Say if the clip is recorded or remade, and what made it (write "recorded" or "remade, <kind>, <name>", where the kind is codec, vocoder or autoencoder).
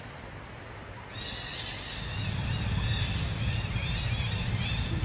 recorded